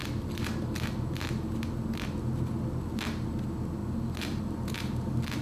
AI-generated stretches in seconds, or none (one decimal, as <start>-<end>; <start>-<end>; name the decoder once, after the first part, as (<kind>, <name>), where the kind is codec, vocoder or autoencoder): none